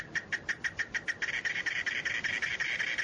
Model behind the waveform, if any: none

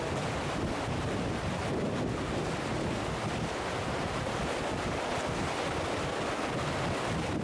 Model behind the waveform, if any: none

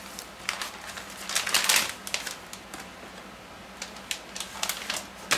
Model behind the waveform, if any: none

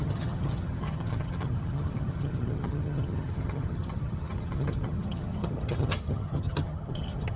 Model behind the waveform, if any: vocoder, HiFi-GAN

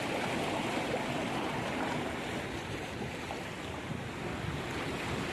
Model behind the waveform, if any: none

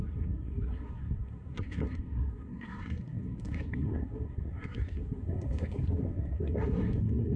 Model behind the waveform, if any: codec, SNAC